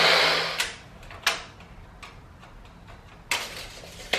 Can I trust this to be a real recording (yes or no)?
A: yes